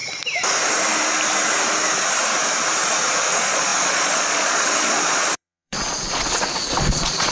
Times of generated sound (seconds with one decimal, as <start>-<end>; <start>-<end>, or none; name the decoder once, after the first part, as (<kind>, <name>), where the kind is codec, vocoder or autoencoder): 3.3-7.3 (vocoder, Vocos)